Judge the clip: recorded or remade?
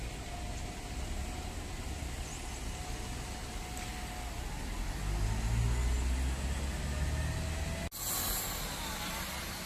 recorded